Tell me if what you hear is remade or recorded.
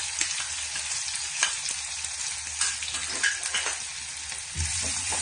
recorded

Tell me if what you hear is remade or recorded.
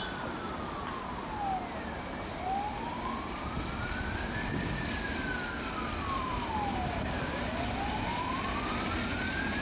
recorded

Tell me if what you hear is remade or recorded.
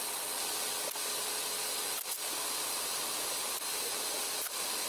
recorded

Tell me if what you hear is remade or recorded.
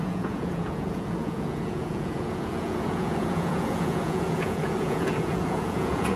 remade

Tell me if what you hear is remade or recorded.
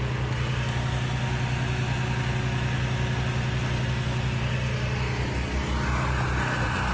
recorded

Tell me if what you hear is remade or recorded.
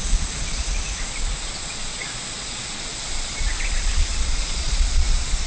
remade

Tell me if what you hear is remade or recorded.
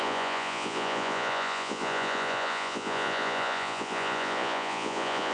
remade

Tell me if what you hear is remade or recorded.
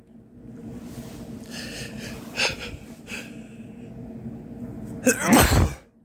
recorded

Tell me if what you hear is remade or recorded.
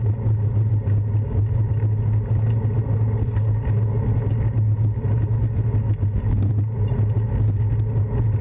recorded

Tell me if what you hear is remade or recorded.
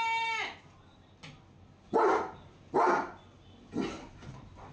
recorded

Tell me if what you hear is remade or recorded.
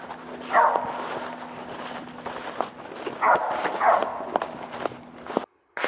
recorded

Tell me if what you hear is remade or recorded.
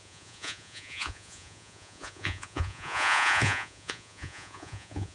remade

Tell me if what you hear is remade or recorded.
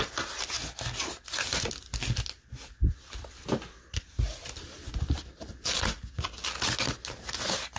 recorded